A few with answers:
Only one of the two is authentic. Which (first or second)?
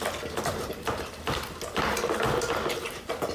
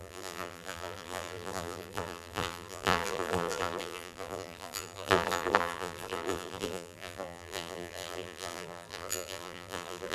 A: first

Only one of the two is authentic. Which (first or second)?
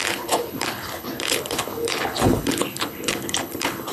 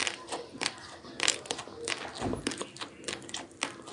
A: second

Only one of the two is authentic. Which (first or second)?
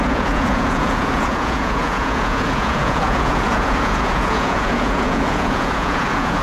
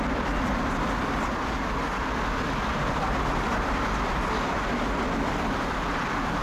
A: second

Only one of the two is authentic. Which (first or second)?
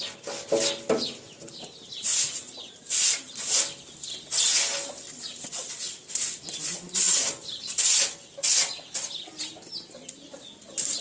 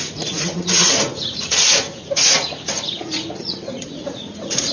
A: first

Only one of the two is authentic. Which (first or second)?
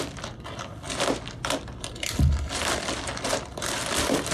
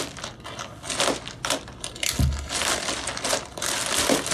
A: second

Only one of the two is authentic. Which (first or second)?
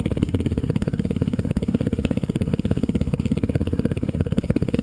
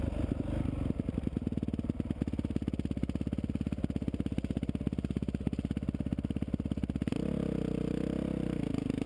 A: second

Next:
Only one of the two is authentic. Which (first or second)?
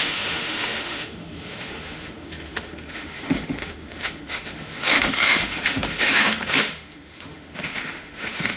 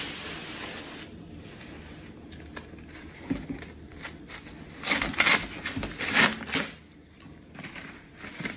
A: second